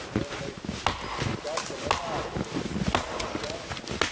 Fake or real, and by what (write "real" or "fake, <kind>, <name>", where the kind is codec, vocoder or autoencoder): real